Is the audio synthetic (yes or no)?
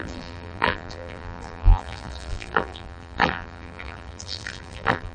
yes